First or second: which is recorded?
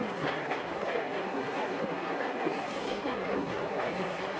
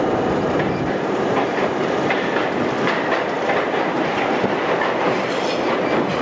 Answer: second